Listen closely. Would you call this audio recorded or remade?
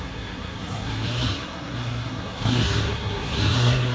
remade